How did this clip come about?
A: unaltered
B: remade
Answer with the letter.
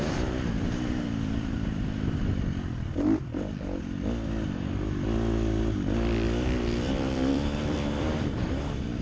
B